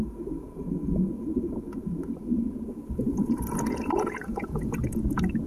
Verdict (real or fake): fake